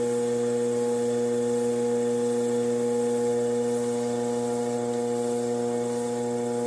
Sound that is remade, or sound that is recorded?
recorded